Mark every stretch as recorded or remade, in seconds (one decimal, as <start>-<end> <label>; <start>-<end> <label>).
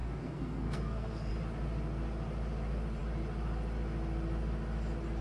0.0-1.3 remade; 1.3-5.2 recorded